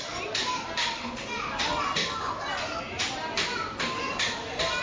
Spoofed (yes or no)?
no